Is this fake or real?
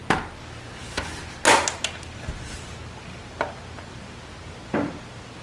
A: real